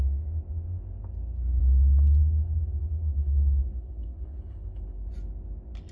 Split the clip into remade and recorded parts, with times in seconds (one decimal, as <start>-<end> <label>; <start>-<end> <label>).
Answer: 0.0-1.6 recorded; 1.6-5.1 remade; 5.1-5.9 recorded